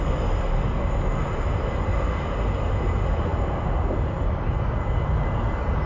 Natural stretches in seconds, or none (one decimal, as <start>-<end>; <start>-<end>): 0.0-5.9